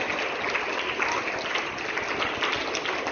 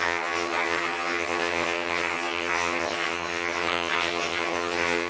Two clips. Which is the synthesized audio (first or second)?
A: second